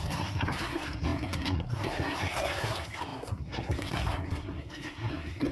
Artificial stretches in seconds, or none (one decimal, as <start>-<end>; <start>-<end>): 0.0-5.5